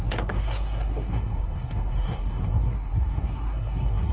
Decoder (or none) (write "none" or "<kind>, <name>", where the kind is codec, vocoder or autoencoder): codec, SNAC